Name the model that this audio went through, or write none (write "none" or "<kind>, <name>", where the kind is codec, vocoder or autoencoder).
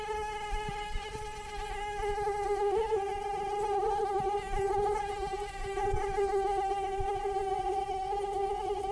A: none